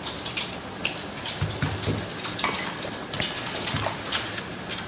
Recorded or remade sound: recorded